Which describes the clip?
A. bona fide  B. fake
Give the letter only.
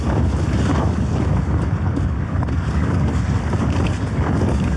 B